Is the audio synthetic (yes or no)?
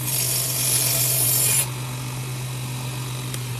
no